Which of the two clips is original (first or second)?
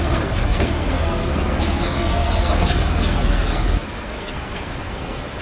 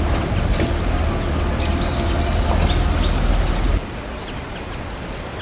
second